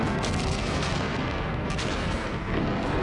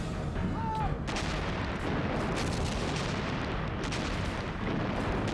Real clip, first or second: second